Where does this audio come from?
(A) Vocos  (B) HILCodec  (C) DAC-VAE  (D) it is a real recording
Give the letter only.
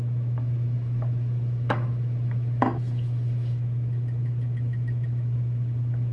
C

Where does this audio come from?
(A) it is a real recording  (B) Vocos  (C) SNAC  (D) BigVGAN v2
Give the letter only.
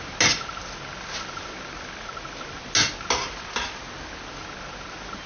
A